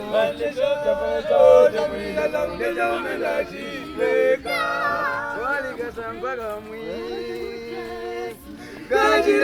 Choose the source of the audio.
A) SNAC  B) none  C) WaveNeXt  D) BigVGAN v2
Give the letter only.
B